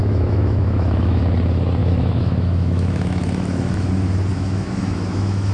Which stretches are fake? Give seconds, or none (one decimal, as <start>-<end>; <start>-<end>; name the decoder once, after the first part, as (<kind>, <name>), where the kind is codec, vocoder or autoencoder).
0.0-1.2 (autoencoder, DAC-VAE); 1.8-3.9; 4.3-5.5